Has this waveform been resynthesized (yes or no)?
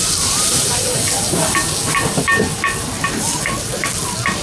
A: no